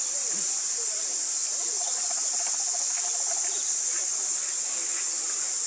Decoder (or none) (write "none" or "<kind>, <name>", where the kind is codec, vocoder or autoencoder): none